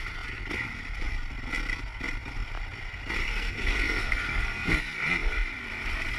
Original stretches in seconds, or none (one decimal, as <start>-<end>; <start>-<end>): 0.0-3.2; 4.7-6.2